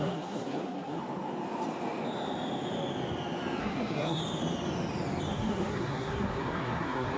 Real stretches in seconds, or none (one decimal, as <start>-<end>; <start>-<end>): 1.0-3.6; 4.2-5.3